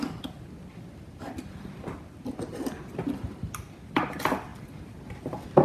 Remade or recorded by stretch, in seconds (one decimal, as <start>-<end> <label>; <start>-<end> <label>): 0.0-5.6 recorded